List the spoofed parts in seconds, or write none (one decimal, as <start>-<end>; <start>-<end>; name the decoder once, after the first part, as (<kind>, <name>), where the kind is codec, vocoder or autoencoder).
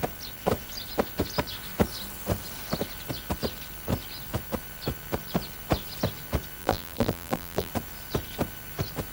6.6-7.7 (vocoder, BigVGAN v2)